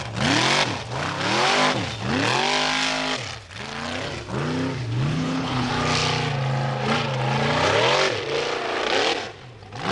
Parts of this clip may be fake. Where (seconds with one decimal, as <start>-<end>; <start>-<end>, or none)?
5.1-5.7